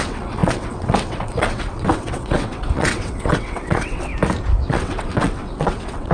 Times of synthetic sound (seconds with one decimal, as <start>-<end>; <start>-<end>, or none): 0.0-4.1; 4.7-6.1